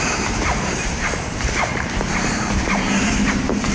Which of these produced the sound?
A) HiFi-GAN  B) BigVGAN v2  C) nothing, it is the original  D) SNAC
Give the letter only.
B